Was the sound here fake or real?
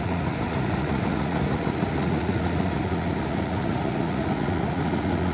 fake